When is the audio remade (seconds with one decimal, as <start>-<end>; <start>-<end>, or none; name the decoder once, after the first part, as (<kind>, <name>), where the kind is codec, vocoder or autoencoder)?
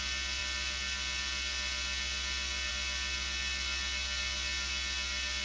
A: none